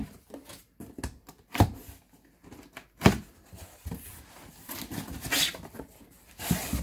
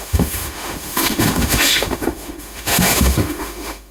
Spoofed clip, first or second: second